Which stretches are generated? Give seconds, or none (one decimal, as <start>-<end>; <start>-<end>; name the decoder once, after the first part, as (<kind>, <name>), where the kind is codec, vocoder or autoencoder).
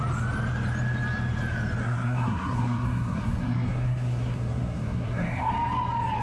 1.8-5.5 (codec, SNAC)